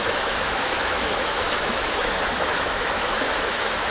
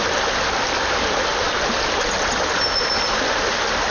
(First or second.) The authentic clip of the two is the second